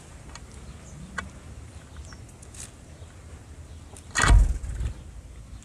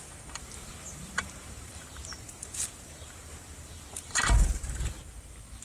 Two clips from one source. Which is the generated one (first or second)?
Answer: second